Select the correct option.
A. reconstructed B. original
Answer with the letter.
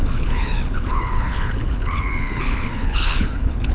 A